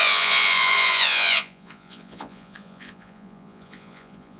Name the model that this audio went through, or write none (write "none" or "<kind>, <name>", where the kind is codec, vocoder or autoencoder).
vocoder, Vocos